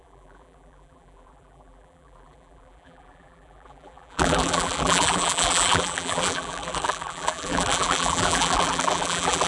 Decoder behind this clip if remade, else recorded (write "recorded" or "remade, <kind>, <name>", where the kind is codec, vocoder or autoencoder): remade, vocoder, BigVGAN v2